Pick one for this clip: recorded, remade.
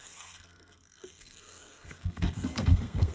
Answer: remade